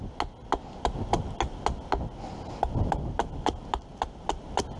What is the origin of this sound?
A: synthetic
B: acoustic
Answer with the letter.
B